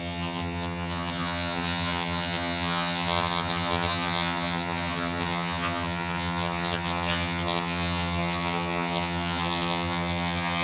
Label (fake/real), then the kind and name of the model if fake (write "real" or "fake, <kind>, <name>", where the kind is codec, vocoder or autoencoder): fake, vocoder, HiFi-GAN